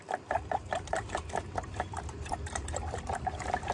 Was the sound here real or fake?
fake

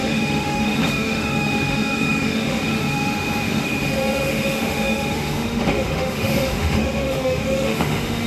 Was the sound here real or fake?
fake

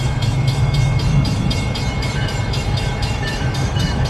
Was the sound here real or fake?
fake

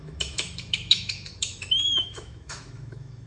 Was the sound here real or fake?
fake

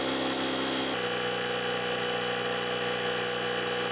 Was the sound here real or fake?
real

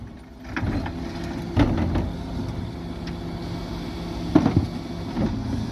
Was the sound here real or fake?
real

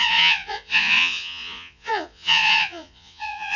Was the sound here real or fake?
fake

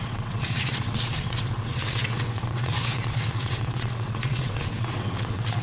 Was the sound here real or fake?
fake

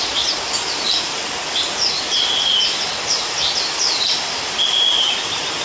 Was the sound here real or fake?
real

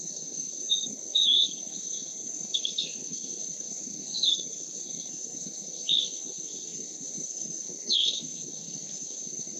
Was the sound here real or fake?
fake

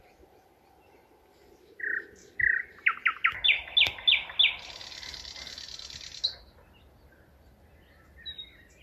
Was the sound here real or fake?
real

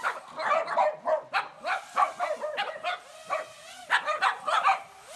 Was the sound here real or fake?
real